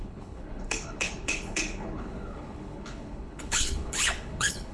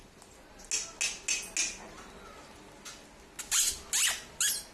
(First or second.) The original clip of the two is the second